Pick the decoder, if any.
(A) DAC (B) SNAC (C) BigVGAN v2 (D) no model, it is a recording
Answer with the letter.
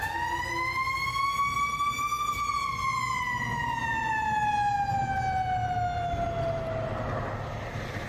D